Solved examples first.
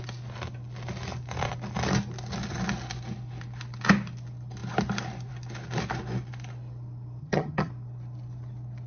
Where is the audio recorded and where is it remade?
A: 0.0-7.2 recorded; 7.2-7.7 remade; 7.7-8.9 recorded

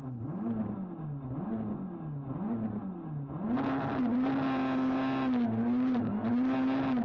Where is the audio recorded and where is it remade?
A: 0.0-7.0 recorded

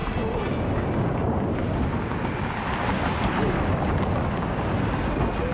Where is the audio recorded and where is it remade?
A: 0.0-5.5 recorded

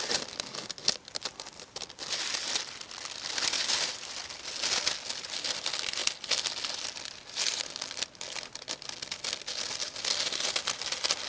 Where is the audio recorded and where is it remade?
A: 0.0-11.3 recorded

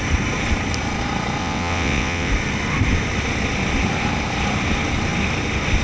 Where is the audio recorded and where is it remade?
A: 0.0-1.4 recorded; 1.4-2.3 remade; 2.3-5.8 recorded

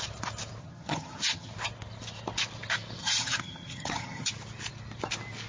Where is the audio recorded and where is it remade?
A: 0.0-0.6 recorded; 0.6-1.5 remade; 1.5-3.0 recorded; 3.0-4.3 remade; 4.3-5.5 recorded

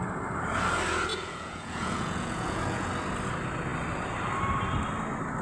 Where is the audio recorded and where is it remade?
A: 0.0-1.1 recorded; 1.1-2.9 remade; 2.9-5.4 recorded